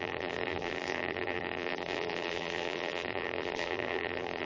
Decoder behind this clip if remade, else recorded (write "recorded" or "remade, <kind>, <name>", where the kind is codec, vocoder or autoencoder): remade, vocoder, BigVGAN v2